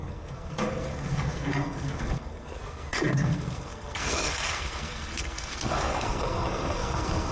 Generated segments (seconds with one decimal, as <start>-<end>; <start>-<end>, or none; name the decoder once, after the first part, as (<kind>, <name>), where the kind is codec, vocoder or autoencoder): 0.0-7.3 (codec, SNAC)